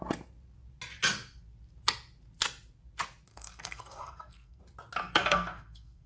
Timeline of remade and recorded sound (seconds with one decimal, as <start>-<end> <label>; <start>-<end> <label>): 0.0-3.3 recorded; 3.3-4.6 remade; 4.6-5.0 recorded; 5.0-6.1 remade